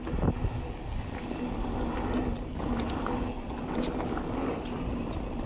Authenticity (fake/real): real